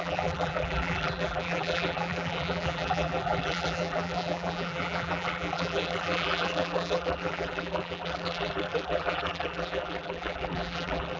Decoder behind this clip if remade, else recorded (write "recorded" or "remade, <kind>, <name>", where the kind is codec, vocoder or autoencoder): remade, vocoder, BigVGAN v2